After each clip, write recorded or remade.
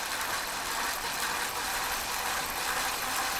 recorded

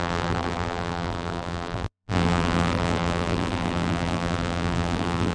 remade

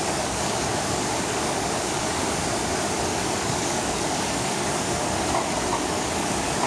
remade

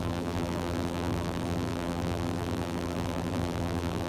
remade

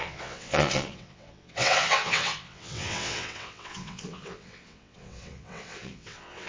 remade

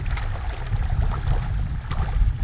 recorded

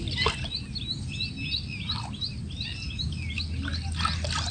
recorded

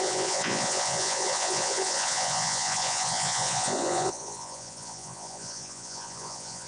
remade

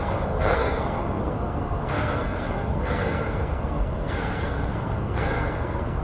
remade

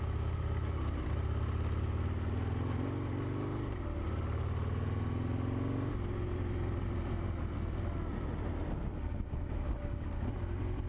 recorded